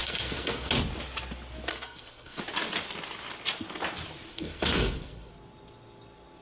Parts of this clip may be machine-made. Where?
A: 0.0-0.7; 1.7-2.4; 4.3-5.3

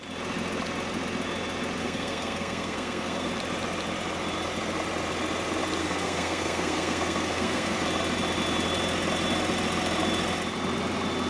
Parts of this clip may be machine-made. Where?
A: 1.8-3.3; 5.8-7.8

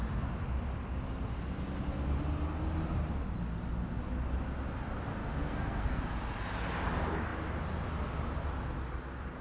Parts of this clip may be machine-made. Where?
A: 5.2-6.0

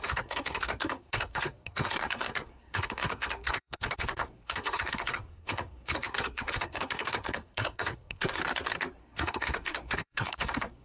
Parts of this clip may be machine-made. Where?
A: 0.0-8.4; 9.0-10.8

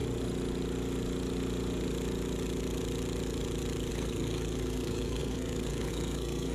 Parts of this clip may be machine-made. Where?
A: 3.9-6.5

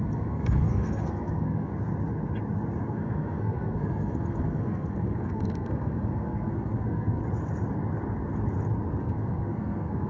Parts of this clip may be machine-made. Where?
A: 0.0-1.7; 2.8-7.2; 9.0-10.1

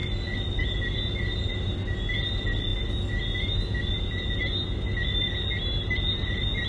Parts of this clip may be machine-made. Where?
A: none

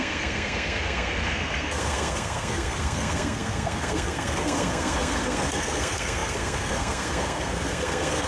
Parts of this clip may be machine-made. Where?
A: 0.0-8.3